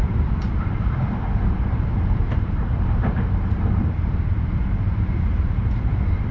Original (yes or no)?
no